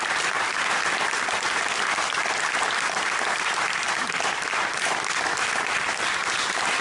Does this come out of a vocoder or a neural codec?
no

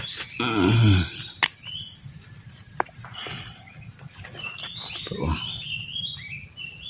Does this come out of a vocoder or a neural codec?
no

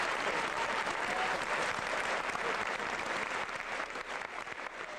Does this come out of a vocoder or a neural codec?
yes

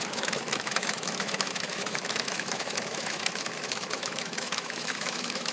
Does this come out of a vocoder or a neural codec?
yes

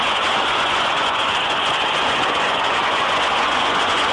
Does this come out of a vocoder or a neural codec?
yes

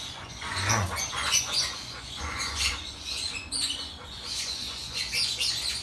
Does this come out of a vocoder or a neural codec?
yes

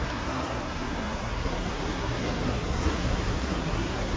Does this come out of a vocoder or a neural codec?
yes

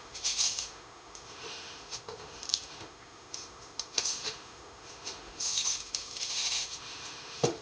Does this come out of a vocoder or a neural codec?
yes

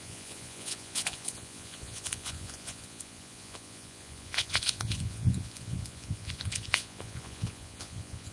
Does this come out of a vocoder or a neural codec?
yes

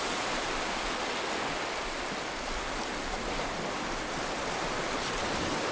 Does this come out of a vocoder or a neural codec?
no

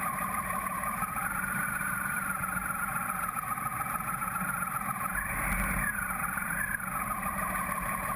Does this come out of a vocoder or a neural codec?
yes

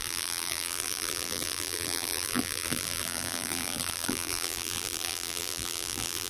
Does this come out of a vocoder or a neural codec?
yes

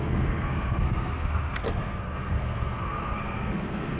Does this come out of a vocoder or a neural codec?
yes